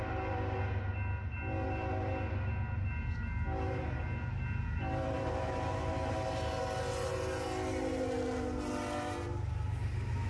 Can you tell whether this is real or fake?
real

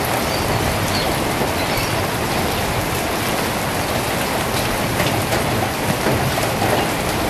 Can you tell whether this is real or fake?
real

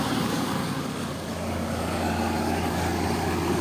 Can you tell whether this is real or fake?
fake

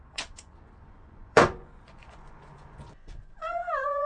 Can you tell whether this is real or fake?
fake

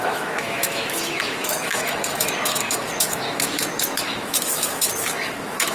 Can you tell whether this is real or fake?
fake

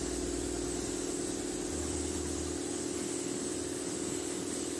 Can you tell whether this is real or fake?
real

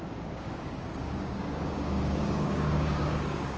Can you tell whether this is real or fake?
fake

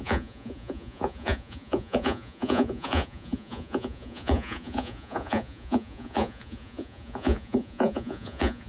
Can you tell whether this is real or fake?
fake